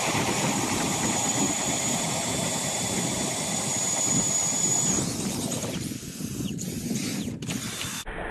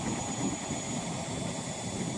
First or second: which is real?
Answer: second